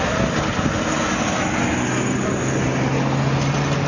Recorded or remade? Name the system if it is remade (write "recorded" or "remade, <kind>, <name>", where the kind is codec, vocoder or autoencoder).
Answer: recorded